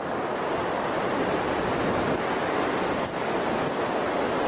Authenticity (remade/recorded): recorded